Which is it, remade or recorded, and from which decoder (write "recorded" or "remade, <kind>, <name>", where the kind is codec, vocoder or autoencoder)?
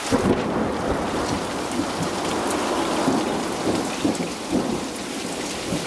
recorded